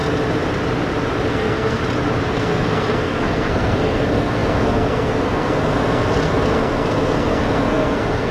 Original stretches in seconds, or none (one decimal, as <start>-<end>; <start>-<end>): 0.0-1.3; 1.8-2.3